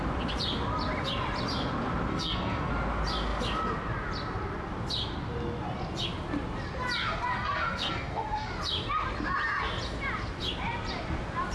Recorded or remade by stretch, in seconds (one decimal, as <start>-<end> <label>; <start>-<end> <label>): 0.0-2.1 recorded; 2.1-2.7 remade; 2.7-7.3 recorded; 7.3-8.5 remade; 8.5-11.5 recorded